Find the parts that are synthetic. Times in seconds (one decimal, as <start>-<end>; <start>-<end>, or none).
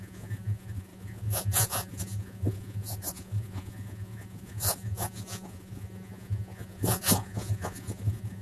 0.0-8.4